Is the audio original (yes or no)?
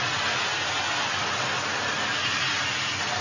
yes